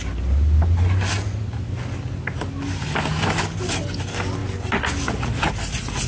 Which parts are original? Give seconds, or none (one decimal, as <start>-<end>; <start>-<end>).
0.0-6.1